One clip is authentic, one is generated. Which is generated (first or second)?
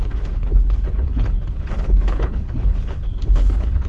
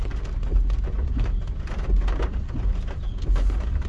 first